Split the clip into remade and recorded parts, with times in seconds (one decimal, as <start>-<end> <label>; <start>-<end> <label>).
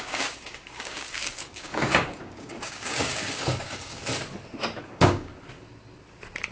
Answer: 0.0-4.1 remade; 4.1-4.8 recorded; 4.8-5.3 remade; 5.3-6.5 recorded